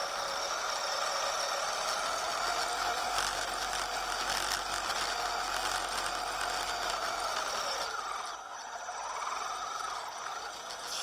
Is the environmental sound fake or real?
real